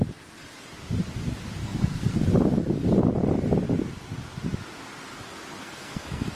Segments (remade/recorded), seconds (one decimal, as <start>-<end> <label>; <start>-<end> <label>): 0.0-1.6 recorded; 1.6-2.2 remade; 2.2-5.6 recorded; 5.6-6.4 remade